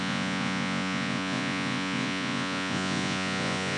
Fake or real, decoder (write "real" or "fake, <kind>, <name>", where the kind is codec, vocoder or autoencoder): fake, vocoder, Vocos